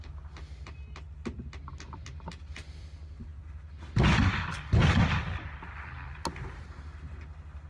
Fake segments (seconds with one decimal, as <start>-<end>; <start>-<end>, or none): none